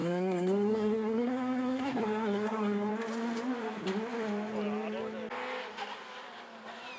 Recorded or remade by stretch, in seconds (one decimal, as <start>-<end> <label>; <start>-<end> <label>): 0.0-2.9 remade; 2.9-7.0 recorded